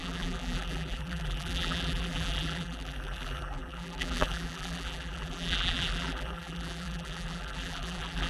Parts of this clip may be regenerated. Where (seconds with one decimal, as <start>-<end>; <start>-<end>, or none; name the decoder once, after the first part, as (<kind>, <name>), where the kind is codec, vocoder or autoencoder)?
0.0-8.3 (vocoder, BigVGAN v2)